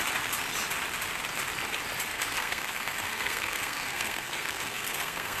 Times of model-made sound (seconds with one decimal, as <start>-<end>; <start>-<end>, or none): 2.1-5.4